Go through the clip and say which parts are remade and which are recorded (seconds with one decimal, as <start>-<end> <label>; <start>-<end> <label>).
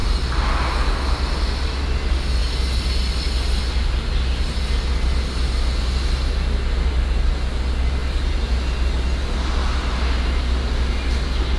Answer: 0.0-11.6 recorded